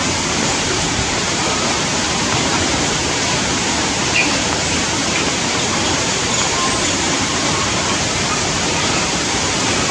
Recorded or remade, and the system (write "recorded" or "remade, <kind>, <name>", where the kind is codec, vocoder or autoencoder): remade, vocoder, BigVGAN v2